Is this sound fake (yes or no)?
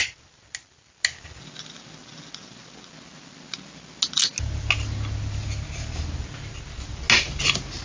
no